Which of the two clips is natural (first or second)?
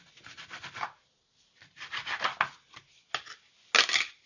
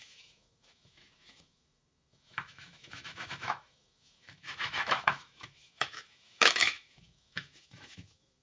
first